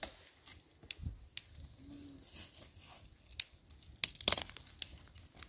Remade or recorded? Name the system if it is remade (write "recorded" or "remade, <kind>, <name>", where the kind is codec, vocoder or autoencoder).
recorded